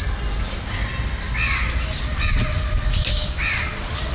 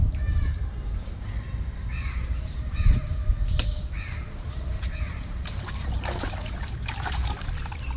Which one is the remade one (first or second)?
second